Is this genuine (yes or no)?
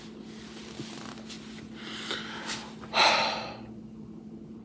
yes